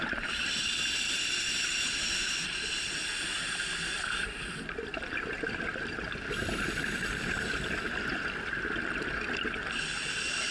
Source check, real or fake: real